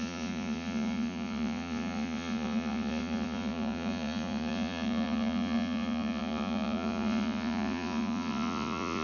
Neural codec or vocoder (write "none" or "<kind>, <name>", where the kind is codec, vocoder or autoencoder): vocoder, Vocos